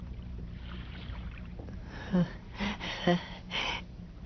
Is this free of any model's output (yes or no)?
no